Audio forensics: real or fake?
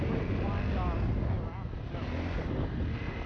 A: real